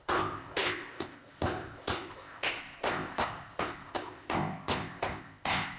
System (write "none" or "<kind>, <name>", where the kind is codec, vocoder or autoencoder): codec, ZipCodec